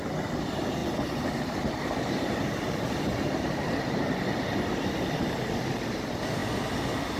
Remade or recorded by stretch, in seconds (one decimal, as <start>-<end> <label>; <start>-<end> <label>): 0.0-0.8 recorded; 0.8-4.1 remade; 4.1-7.2 recorded